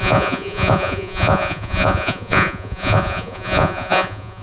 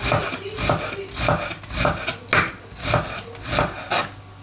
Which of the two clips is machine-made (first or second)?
first